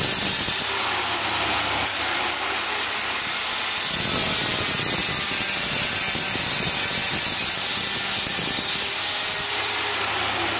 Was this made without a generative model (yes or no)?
yes